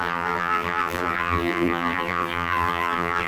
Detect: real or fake fake